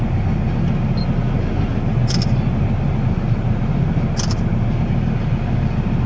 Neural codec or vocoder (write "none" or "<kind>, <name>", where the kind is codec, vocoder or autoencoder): none